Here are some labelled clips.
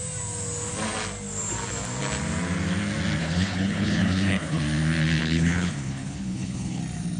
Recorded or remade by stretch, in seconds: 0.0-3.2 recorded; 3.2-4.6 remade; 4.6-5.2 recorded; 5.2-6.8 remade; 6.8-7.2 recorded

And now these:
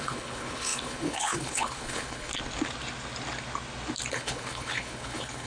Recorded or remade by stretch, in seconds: 0.0-2.3 remade; 2.3-4.1 recorded; 4.1-5.5 remade

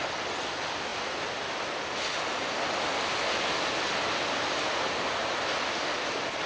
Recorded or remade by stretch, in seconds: 0.0-6.5 recorded

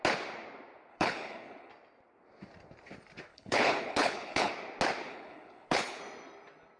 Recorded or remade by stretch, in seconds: 0.0-0.9 recorded; 0.9-1.7 remade; 1.7-3.3 recorded; 3.3-4.5 remade; 4.5-5.1 recorded; 5.1-6.0 remade; 6.0-6.8 recorded

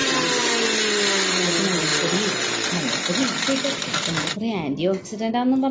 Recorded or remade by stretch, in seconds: 0.0-5.7 recorded

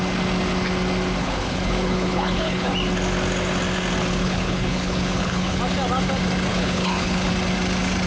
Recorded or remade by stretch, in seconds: 0.0-1.2 recorded; 1.2-2.7 remade; 2.7-4.2 recorded; 4.2-5.6 remade; 5.6-6.5 recorded; 6.5-7.3 remade; 7.3-8.1 recorded

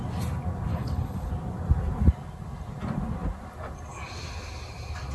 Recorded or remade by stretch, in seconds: 0.0-0.7 recorded; 0.7-1.3 remade; 1.3-5.1 recorded

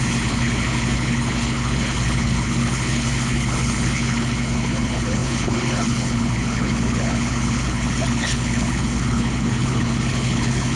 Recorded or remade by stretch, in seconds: 0.0-10.8 remade